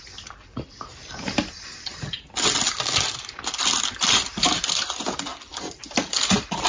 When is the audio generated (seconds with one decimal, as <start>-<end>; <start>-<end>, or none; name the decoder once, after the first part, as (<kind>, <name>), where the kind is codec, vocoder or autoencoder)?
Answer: none